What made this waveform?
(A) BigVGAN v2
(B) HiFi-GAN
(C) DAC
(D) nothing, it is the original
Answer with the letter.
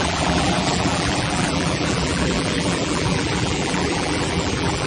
A